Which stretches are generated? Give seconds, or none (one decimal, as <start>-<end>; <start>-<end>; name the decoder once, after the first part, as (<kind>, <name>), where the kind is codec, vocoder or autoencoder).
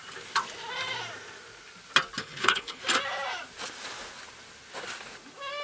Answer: 2.2-2.8 (codec, HILCodec)